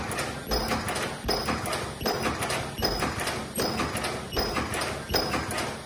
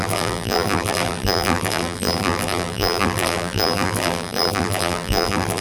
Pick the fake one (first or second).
second